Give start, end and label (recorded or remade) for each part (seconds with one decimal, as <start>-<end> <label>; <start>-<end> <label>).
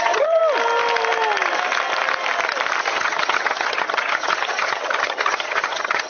0.0-0.4 remade; 0.4-2.8 recorded; 2.8-6.1 remade